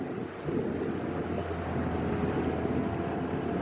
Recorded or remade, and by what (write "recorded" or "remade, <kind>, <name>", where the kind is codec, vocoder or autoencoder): recorded